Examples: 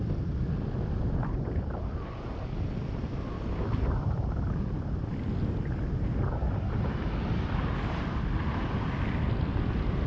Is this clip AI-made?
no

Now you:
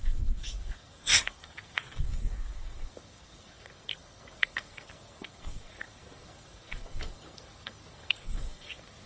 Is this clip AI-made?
yes